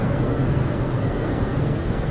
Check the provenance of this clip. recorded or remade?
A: remade